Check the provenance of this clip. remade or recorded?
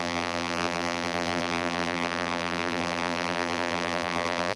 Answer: remade